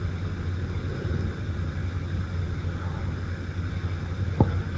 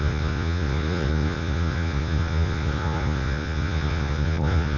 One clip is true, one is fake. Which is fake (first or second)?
second